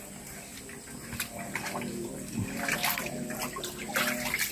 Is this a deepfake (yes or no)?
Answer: no